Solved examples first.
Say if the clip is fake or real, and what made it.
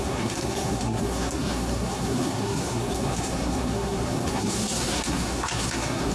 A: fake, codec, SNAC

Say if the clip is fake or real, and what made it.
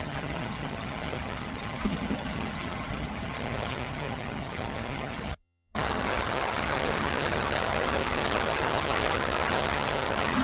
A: fake, vocoder, HiFi-GAN